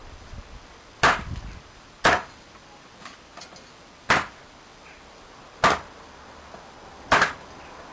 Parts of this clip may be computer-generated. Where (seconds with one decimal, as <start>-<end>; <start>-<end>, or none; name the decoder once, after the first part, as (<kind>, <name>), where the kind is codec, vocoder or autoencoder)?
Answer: none